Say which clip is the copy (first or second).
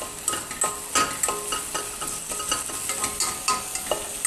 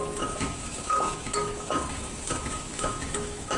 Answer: second